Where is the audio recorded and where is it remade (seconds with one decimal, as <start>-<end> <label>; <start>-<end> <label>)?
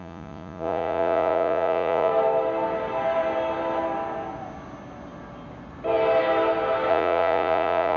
0.0-2.1 remade; 2.1-6.9 recorded; 6.9-8.0 remade